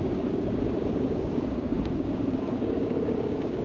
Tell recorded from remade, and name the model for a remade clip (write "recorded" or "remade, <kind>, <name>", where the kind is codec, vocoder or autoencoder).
remade, codec, DAC